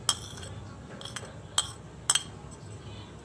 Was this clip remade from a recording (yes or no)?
no